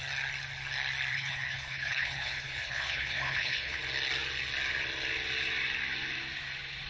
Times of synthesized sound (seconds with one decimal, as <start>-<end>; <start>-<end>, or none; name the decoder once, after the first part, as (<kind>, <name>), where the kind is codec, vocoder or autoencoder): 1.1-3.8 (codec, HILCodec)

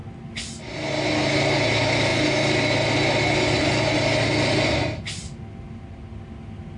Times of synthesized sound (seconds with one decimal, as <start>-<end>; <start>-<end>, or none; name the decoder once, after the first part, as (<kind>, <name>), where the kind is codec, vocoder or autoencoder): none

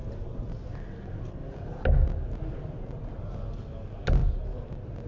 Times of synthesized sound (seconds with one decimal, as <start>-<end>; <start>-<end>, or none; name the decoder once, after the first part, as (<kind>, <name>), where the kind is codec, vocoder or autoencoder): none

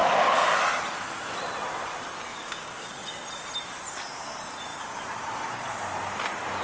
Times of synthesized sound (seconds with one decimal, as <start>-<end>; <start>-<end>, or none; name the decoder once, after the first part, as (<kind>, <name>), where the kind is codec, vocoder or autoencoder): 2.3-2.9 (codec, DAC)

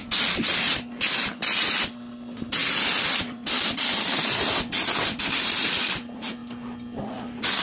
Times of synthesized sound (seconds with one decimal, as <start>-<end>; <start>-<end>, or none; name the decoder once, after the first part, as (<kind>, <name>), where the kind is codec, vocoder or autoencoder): none

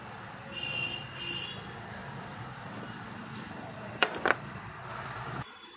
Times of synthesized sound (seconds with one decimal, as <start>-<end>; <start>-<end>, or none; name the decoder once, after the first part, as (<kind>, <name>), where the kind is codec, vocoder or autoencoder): 2.0-5.8 (vocoder, BigVGAN v2)

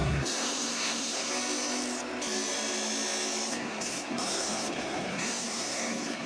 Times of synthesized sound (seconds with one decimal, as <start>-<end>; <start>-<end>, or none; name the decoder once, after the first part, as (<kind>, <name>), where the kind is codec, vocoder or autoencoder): 0.0-1.3 (codec, SNAC); 3.5-6.3